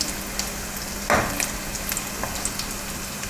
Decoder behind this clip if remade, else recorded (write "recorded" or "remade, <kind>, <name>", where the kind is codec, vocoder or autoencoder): recorded